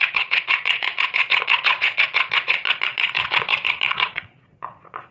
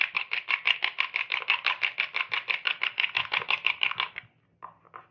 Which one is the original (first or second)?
second